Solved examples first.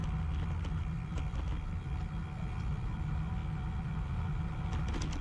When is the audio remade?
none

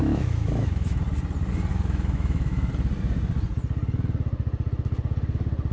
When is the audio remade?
0.0-1.0 (autoencoder, DAC-VAE); 1.7-2.7

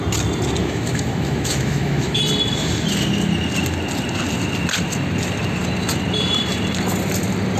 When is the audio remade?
0.6-2.2 (autoencoder, DAC-VAE)

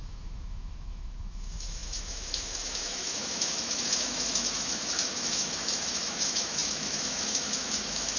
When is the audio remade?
0.0-8.2 (autoencoder, DAC-VAE)